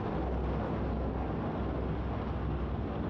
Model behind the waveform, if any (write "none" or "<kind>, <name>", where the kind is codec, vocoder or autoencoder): none